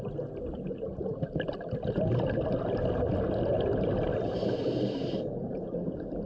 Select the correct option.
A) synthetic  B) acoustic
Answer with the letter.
B